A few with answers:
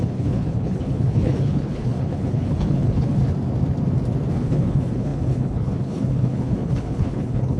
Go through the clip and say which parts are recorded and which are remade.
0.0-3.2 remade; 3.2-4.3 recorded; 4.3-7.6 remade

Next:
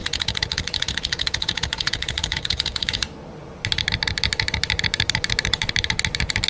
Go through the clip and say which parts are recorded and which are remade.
0.0-6.5 remade

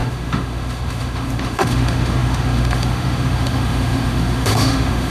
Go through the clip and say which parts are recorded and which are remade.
0.0-5.1 remade

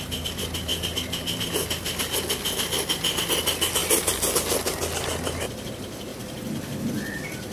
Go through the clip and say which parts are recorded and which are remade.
0.0-7.5 recorded

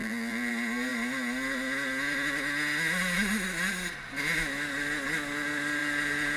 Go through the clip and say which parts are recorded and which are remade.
0.0-0.5 remade; 0.5-6.4 recorded

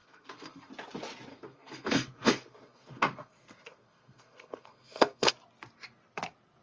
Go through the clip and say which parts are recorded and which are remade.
0.0-0.7 remade; 0.7-1.3 recorded; 1.3-5.3 remade; 5.3-6.6 recorded

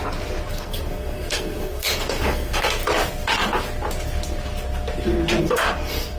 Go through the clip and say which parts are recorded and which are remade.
0.0-0.5 recorded; 0.5-2.8 remade; 2.8-5.4 recorded; 5.4-6.2 remade